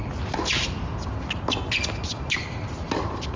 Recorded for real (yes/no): yes